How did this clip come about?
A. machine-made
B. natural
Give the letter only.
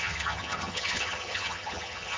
A